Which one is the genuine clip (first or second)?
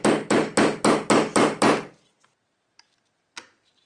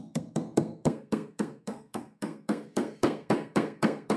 first